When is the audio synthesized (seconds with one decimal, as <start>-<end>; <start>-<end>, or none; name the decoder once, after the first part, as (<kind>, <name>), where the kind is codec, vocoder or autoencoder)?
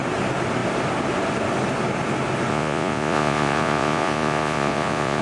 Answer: 2.5-5.2 (vocoder, Vocos)